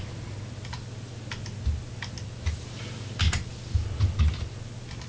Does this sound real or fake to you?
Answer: real